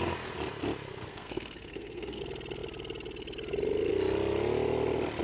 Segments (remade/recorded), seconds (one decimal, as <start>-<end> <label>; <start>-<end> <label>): 0.0-1.1 recorded; 1.1-2.2 remade; 2.2-5.2 recorded